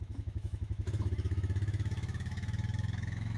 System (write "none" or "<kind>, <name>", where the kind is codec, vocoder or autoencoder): autoencoder, DAC-VAE